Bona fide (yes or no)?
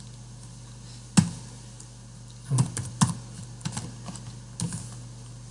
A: yes